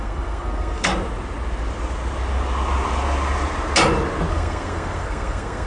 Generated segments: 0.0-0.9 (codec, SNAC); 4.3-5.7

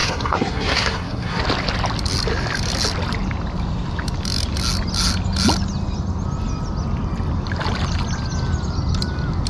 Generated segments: 0.0-1.4 (codec, SNAC)

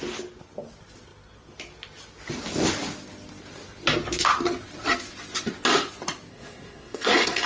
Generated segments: 6.3-7.5 (codec, SNAC)

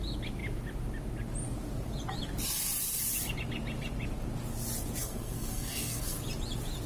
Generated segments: 5.0-6.2 (codec, SNAC)

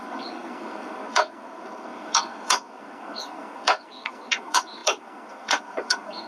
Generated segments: 0.0-6.3 (codec, SNAC)

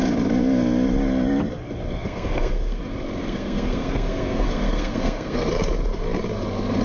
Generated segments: 1.9-2.8 (codec, SNAC); 3.2-5.5